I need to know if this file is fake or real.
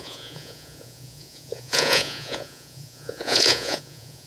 fake